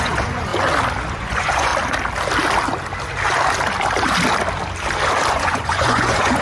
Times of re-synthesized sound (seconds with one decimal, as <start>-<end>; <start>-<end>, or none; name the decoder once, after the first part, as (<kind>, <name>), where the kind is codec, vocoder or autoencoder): 0.0-0.5 (vocoder, Vocos); 1.1-1.7; 5.3-6.4